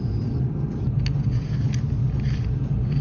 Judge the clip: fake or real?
real